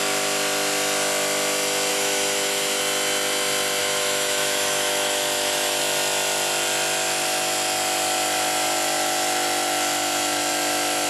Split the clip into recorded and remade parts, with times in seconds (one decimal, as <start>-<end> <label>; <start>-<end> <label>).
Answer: 0.0-1.9 recorded; 1.9-2.8 remade; 2.8-3.8 recorded; 3.8-5.8 remade; 5.8-11.1 recorded